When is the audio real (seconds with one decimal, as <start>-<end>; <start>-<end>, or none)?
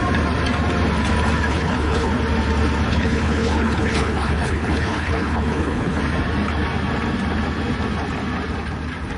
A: 0.0-1.5; 2.1-2.9; 6.0-9.2